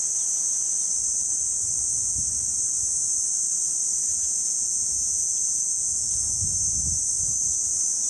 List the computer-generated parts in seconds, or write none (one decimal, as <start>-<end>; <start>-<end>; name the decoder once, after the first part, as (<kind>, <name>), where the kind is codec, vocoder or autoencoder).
4.1-6.4 (vocoder, Vocos)